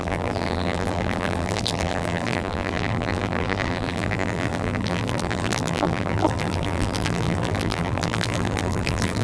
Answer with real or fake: fake